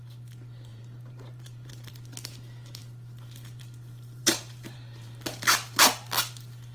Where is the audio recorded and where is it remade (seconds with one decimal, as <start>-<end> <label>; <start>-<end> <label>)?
0.0-0.7 recorded; 0.7-1.9 remade; 1.9-4.2 recorded; 4.2-6.1 remade; 6.1-6.7 recorded